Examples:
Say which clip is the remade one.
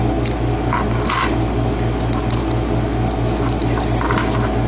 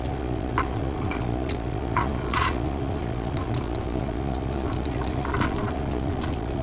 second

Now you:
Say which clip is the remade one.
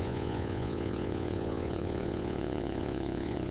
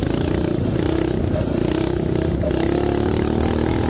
first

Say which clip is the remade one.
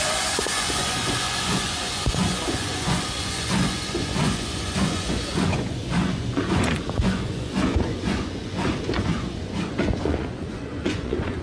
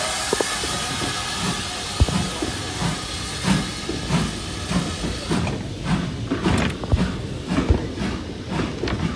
first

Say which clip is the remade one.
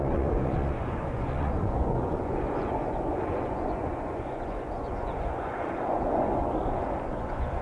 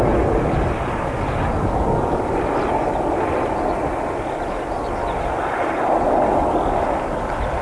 first